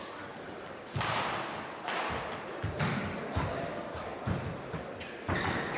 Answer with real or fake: real